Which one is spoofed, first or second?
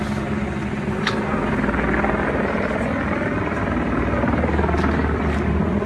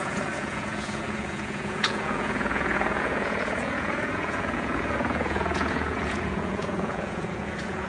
second